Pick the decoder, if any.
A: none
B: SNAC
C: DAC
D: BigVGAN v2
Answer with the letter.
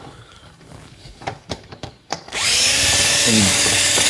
C